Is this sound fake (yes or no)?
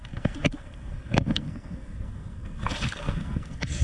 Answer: yes